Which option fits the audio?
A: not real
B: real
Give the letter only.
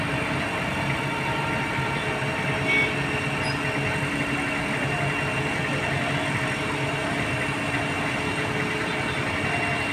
B